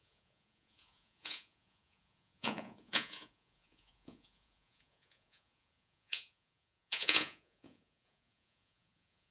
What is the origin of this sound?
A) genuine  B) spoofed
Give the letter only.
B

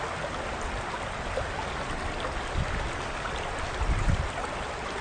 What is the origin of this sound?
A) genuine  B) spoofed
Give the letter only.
A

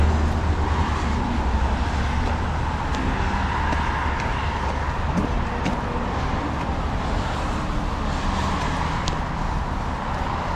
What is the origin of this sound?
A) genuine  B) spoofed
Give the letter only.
A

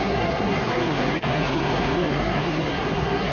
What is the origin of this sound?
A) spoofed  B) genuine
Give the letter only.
A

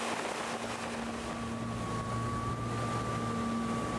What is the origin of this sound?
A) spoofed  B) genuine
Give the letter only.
B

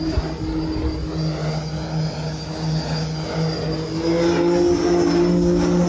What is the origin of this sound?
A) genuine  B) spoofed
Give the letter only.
A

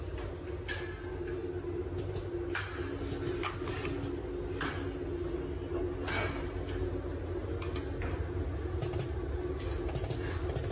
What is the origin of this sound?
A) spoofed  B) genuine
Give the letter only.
B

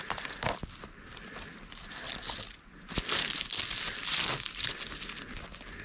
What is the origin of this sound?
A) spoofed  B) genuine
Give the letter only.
B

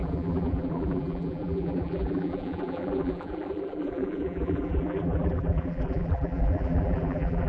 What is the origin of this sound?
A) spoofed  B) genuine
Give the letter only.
A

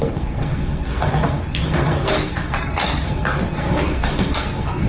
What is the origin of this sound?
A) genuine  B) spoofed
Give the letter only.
B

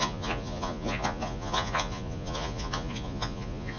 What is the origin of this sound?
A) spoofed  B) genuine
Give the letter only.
A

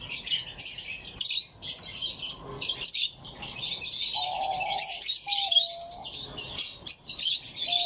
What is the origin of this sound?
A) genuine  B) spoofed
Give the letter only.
A